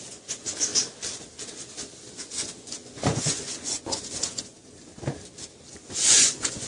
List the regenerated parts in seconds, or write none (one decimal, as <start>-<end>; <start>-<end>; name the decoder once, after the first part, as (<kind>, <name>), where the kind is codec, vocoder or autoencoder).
0.0-0.7 (vocoder, Vocos); 2.2-4.9; 5.7-6.7